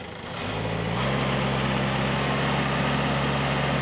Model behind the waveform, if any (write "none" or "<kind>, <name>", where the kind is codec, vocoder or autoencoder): none